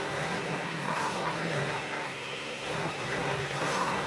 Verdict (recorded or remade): remade